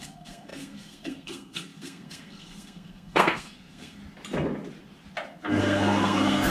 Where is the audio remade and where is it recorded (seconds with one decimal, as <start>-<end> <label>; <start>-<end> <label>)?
0.0-4.0 remade; 4.0-5.6 recorded; 5.6-6.5 remade